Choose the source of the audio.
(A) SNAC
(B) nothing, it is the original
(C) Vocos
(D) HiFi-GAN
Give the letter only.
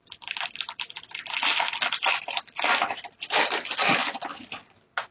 B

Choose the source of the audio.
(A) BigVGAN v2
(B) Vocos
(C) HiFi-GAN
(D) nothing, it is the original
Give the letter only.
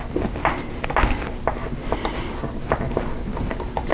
D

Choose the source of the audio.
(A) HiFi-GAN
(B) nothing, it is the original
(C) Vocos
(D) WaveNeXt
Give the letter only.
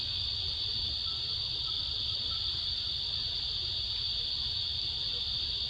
B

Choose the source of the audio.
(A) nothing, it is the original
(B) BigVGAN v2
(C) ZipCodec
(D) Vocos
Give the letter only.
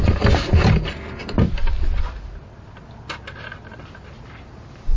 A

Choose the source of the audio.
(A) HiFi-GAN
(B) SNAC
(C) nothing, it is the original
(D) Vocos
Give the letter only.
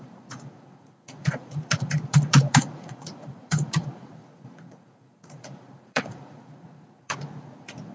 D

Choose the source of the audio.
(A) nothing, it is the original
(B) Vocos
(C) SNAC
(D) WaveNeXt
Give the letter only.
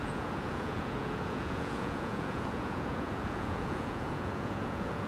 B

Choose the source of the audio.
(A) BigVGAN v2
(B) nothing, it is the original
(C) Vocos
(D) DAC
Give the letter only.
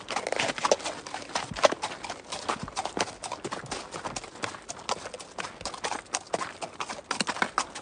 B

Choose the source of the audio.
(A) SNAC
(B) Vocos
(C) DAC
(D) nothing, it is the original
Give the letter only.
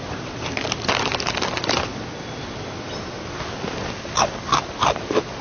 D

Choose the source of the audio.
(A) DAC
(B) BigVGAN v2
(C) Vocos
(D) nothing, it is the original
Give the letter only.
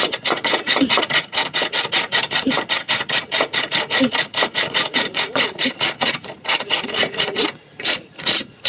C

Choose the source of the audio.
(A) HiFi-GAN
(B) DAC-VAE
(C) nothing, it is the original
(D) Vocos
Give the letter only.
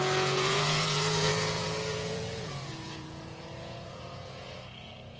D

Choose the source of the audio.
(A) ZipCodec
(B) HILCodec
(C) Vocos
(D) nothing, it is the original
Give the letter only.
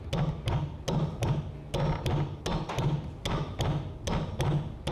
D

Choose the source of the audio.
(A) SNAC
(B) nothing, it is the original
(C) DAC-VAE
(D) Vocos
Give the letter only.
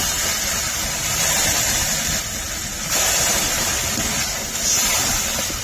B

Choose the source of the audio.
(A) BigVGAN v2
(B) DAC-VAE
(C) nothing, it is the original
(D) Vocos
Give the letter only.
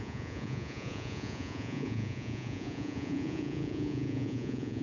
D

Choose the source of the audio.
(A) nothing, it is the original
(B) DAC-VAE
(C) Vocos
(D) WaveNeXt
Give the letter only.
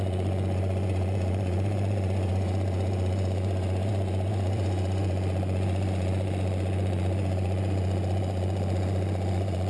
C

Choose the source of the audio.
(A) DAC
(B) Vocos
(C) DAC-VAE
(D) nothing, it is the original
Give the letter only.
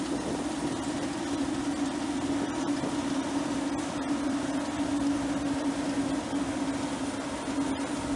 D